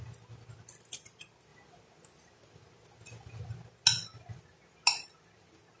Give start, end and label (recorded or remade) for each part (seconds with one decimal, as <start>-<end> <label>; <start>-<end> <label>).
0.0-5.8 recorded